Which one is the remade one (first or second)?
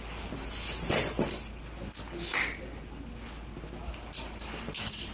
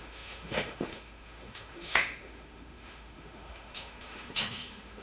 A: second